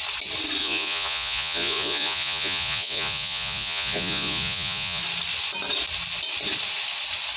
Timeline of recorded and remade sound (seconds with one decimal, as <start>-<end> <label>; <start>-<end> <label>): 0.0-0.6 recorded; 0.6-5.0 remade; 5.0-7.4 recorded